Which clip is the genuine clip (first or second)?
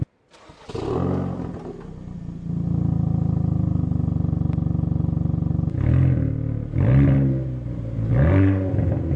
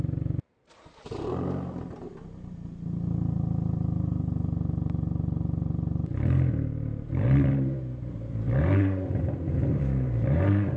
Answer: first